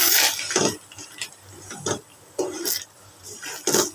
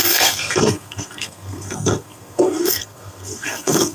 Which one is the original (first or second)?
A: first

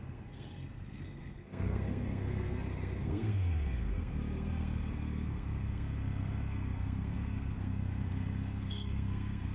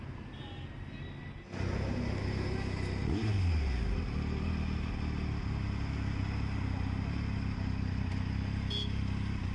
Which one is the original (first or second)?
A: second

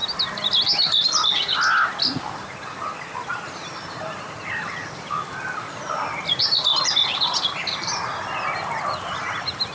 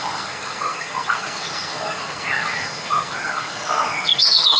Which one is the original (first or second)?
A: first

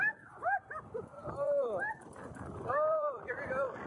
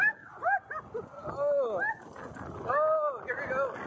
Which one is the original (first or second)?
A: second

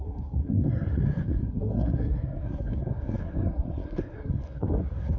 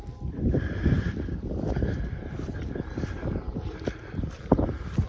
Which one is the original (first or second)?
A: second